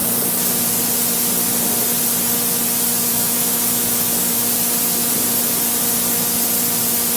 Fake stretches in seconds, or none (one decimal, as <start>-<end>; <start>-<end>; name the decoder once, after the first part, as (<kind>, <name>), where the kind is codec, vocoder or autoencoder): 3.1-4.5 (autoencoder, DAC-VAE)